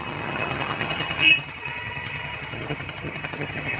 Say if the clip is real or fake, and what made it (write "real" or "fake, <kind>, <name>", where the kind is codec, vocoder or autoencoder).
fake, vocoder, HiFi-GAN